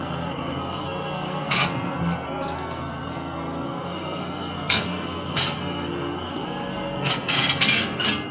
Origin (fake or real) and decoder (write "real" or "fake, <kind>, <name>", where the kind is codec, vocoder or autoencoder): fake, codec, SNAC